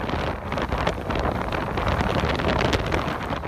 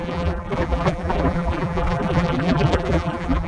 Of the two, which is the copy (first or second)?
second